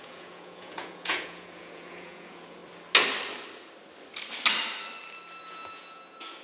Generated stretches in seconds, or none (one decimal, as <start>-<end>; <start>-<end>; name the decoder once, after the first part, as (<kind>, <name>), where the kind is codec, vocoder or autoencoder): 0.0-2.6 (vocoder, Vocos); 5.4-6.4